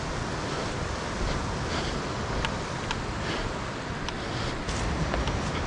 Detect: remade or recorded recorded